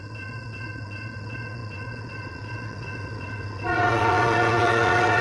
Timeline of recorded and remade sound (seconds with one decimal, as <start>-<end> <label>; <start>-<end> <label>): 0.0-5.2 remade